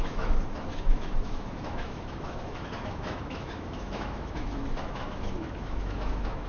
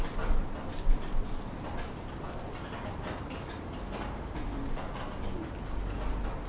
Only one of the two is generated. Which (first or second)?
first